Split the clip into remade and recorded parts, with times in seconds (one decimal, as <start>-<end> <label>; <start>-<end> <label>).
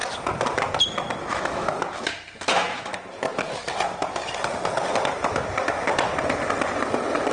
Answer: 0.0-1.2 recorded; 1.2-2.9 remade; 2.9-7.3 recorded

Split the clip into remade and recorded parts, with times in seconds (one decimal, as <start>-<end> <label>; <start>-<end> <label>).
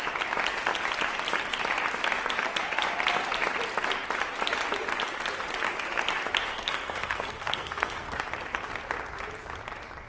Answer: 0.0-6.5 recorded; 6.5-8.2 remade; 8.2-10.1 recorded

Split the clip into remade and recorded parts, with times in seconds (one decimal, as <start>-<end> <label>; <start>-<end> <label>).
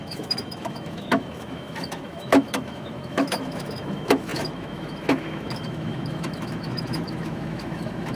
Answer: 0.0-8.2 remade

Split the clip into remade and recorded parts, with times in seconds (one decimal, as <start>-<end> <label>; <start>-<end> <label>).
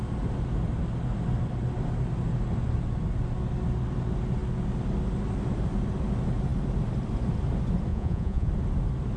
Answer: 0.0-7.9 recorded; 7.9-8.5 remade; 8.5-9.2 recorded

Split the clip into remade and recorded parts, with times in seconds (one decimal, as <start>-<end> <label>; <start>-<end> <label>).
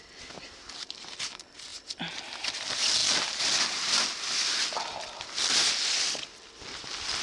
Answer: 0.0-7.2 recorded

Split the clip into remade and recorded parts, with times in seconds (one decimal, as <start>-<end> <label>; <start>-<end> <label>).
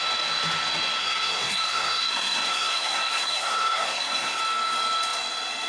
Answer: 0.0-1.0 recorded; 1.0-4.4 remade; 4.4-5.7 recorded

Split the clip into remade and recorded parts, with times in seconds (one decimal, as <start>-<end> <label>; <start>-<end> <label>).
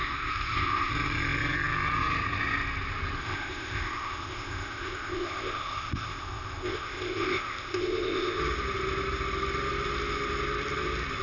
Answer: 0.0-0.9 remade; 0.9-3.2 recorded; 3.2-8.4 remade; 8.4-11.2 recorded